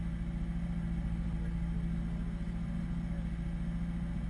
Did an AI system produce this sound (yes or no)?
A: no